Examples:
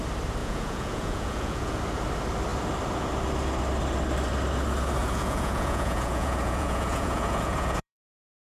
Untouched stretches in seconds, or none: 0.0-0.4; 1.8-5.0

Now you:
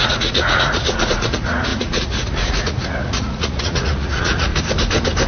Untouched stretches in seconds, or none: 4.5-5.3

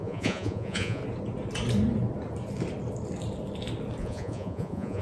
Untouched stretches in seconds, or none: 1.0-4.0